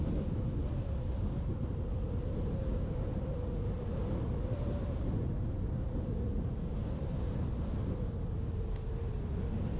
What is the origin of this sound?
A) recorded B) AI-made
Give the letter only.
A